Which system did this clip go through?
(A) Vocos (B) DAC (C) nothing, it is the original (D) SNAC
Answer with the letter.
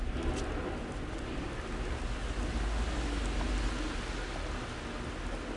C